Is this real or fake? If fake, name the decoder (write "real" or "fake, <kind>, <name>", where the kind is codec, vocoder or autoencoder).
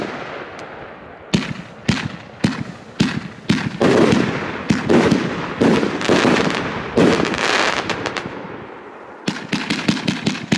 real